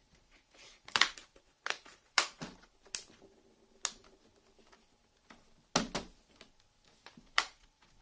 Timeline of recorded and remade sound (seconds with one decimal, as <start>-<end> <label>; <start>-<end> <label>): 0.0-2.4 remade; 2.4-7.2 recorded; 7.2-8.0 remade